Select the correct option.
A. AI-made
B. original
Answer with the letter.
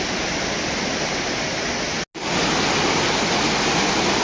B